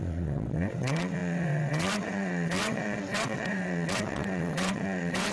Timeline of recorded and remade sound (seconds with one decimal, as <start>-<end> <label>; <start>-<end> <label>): 0.0-5.3 remade